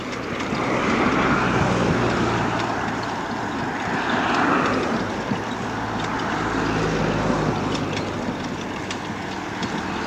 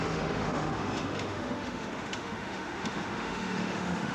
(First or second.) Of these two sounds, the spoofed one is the second